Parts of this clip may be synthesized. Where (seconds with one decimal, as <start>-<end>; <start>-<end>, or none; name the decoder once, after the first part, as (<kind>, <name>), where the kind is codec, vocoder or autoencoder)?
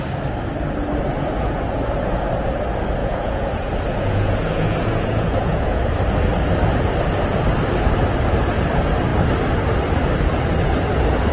3.0-5.8 (vocoder, Vocos)